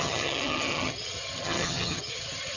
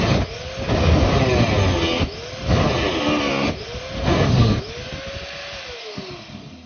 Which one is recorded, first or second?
second